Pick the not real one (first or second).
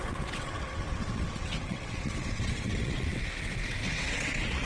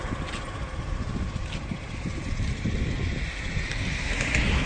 first